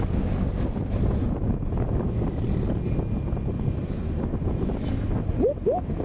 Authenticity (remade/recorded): recorded